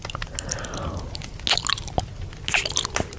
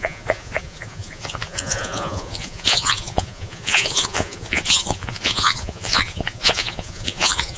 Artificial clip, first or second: second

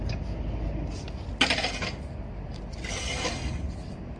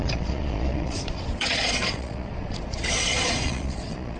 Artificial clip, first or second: second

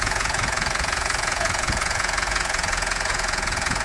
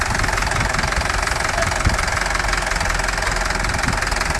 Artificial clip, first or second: first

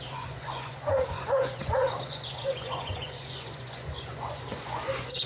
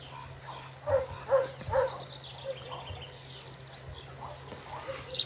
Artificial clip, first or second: first